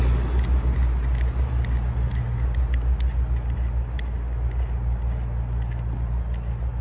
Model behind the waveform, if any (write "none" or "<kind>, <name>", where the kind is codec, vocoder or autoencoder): none